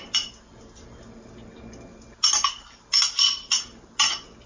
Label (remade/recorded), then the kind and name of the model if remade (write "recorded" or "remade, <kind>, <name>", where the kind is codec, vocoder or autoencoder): recorded